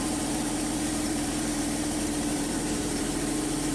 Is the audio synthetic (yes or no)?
yes